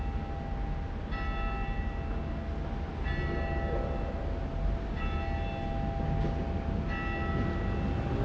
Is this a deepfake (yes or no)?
no